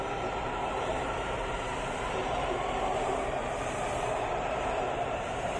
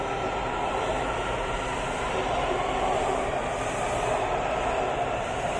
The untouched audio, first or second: second